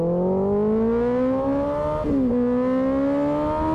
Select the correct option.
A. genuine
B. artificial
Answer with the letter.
A